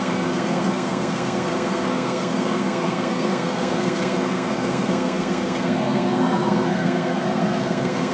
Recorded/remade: remade